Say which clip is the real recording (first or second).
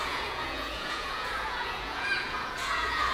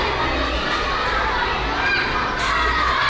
second